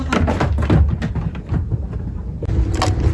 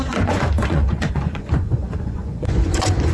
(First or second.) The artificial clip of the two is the second